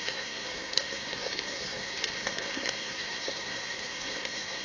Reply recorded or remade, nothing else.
remade